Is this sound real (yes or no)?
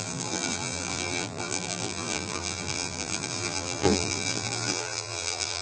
no